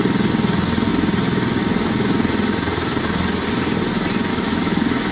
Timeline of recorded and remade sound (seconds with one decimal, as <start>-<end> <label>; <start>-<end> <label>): 0.0-4.3 recorded; 4.3-5.1 remade

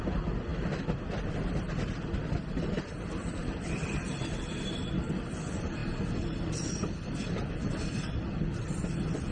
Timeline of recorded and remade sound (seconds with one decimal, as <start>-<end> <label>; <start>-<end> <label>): 0.0-9.3 recorded